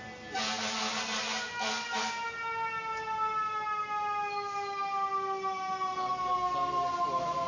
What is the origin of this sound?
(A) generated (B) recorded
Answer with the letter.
B